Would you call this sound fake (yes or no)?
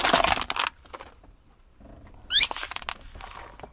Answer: no